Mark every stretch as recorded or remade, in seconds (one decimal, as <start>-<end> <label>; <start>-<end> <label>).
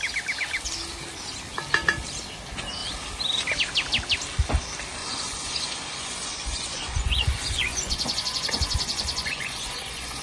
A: 0.0-5.0 recorded; 5.0-10.2 remade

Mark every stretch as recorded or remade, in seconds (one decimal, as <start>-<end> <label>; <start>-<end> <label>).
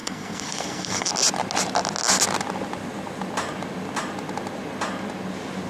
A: 0.0-1.1 remade; 1.1-5.7 recorded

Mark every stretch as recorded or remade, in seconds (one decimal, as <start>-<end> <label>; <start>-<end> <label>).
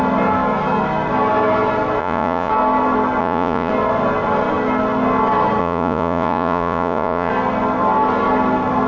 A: 0.0-2.0 recorded; 2.0-2.5 remade; 2.5-3.2 recorded; 3.2-3.7 remade; 3.7-5.6 recorded; 5.6-7.3 remade; 7.3-8.9 recorded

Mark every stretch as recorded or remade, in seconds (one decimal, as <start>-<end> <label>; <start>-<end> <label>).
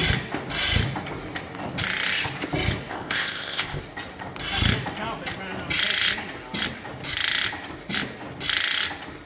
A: 0.0-2.9 recorded; 2.9-3.8 remade; 3.8-9.3 recorded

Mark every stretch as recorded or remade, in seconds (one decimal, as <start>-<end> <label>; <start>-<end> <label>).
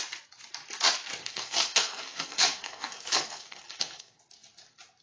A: 0.0-1.2 recorded; 1.2-4.2 remade; 4.2-5.0 recorded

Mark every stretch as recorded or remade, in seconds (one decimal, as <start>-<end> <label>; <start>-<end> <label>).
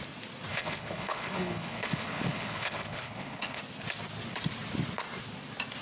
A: 0.0-0.5 recorded; 0.5-3.6 remade; 3.6-5.8 recorded